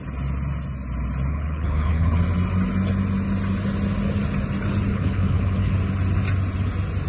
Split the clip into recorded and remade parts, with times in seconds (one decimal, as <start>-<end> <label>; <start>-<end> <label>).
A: 0.0-1.3 recorded; 1.3-2.2 remade; 2.2-4.9 recorded; 4.9-5.7 remade; 5.7-7.1 recorded